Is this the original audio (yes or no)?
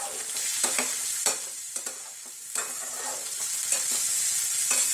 yes